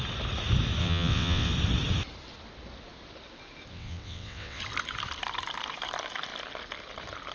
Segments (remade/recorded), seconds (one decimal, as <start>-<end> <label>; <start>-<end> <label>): 0.0-0.8 recorded; 0.8-1.5 remade; 1.5-3.7 recorded; 3.7-4.6 remade; 4.6-7.3 recorded